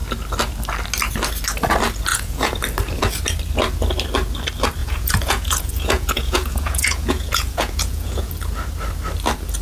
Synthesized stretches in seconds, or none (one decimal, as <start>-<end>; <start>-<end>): 2.1-2.6; 4.8-8.3